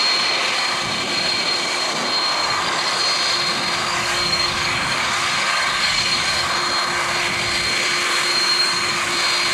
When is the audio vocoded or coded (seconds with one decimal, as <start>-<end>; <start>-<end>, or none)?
2.4-3.0; 3.8-6.5; 8.3-9.1